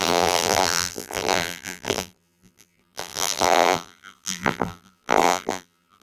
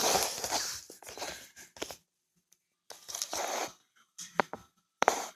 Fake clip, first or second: first